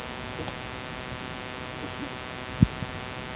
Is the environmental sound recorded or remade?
recorded